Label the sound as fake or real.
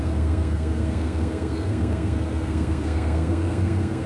fake